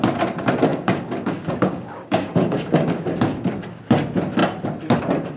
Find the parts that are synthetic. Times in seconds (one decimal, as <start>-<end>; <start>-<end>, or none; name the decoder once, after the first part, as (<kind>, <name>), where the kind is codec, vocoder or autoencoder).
0.7-3.9 (codec, DAC)